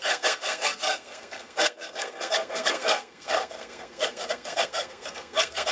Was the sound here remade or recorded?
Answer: remade